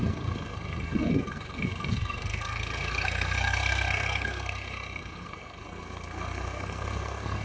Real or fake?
fake